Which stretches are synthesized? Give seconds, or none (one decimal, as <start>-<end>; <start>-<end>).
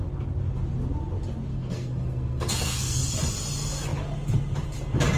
1.5-3.0